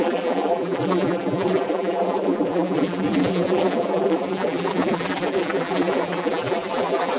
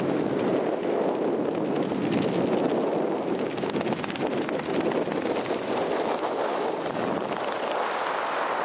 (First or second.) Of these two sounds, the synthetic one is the first